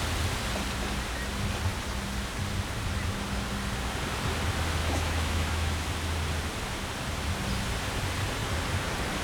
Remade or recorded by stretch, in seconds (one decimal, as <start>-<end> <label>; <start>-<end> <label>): 0.0-4.8 recorded; 4.8-5.9 remade; 5.9-9.2 recorded